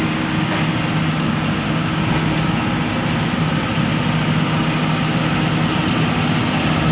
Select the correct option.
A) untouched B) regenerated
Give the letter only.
A